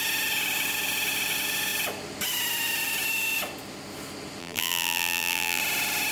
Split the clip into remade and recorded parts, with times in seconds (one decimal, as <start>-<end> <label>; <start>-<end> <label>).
0.0-4.4 recorded; 4.4-5.6 remade; 5.6-6.1 recorded